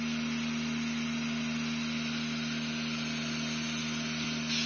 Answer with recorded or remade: recorded